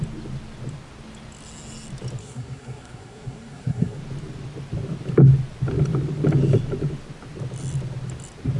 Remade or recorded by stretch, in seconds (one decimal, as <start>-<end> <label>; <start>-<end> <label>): 0.0-2.2 recorded; 2.2-4.0 remade; 4.0-8.6 recorded